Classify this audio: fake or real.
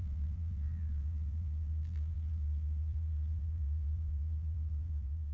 fake